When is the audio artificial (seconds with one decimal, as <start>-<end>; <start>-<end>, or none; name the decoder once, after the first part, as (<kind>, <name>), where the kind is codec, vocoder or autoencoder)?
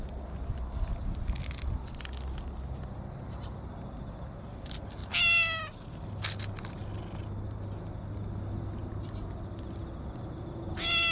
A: none